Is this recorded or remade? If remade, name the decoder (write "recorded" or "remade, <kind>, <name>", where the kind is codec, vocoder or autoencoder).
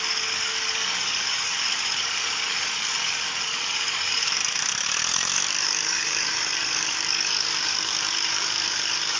remade, codec, DAC